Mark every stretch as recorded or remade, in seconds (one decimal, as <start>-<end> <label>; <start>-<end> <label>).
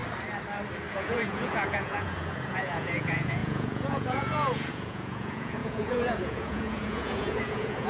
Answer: 0.0-0.9 recorded; 0.9-7.9 remade